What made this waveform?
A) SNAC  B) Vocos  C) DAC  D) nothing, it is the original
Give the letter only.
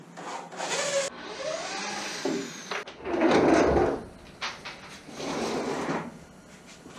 D